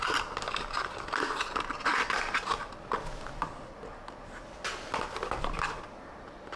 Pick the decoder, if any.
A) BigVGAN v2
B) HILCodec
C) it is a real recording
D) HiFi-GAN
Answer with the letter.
C